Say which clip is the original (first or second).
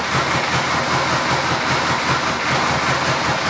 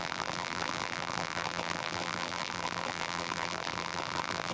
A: first